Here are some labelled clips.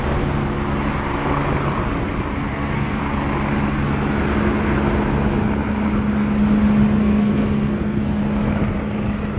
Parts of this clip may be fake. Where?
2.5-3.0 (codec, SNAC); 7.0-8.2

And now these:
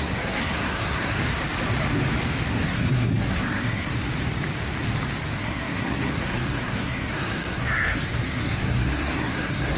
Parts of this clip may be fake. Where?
0.0-1.2 (codec, SNAC); 2.5-3.9; 5.4-9.8